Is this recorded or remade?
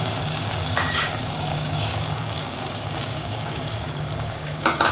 remade